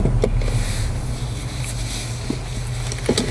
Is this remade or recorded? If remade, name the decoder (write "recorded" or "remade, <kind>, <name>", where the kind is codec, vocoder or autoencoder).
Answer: recorded